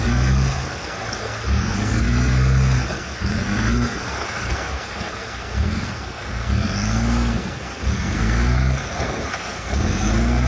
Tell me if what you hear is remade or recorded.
remade